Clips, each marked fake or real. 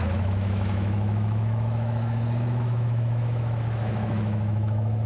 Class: fake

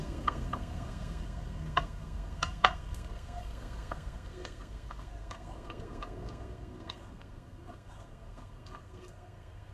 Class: fake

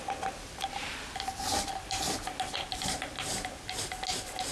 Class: real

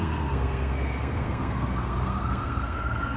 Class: fake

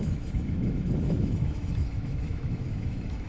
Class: fake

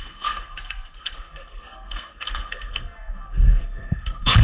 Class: fake